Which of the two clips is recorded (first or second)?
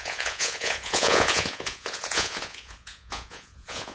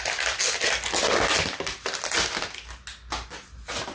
second